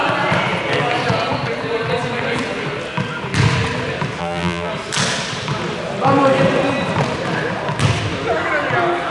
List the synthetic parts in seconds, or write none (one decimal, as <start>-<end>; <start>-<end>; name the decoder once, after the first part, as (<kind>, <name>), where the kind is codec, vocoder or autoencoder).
4.2-4.7 (vocoder, BigVGAN v2)